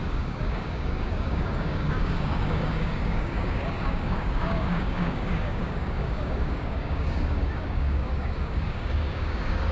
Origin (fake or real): fake